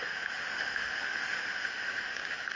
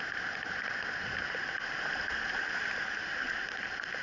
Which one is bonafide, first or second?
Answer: second